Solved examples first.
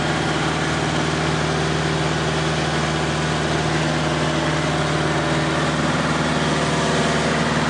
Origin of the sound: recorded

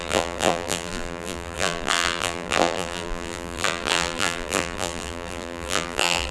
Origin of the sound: remade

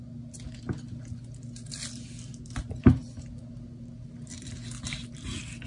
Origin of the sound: recorded